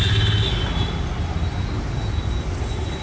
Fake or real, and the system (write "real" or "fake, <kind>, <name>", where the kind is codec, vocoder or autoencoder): real